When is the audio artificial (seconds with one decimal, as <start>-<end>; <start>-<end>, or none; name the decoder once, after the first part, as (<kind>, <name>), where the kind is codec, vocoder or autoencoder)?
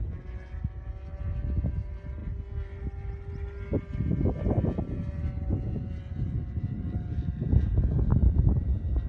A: 8.1-9.1 (vocoder, BigVGAN v2)